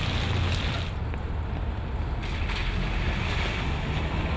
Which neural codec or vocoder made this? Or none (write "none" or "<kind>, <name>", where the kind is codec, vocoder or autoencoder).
none